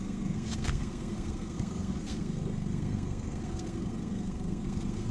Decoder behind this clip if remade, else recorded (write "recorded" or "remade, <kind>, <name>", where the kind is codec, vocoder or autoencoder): remade, codec, SNAC